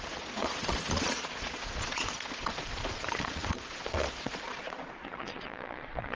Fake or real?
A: fake